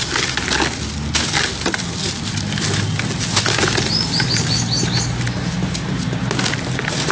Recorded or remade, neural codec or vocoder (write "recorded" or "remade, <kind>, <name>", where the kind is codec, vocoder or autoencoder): recorded